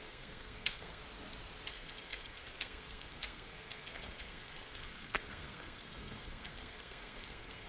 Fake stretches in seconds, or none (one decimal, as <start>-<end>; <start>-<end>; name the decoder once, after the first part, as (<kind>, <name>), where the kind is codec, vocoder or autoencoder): 0.0-1.0 (codec, SNAC); 1.7-7.7